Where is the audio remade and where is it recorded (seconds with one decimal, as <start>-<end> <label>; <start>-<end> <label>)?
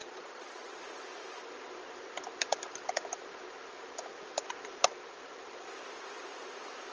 0.0-0.8 remade; 0.8-6.9 recorded